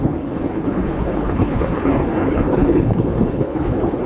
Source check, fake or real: fake